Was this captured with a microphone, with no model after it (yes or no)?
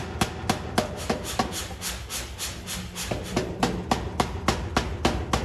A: yes